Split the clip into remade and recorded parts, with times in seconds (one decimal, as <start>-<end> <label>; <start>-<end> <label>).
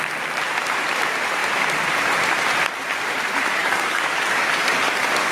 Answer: 0.0-3.6 recorded; 3.6-5.3 remade